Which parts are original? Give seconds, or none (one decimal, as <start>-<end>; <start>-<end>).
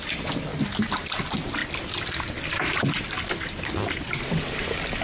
0.0-5.0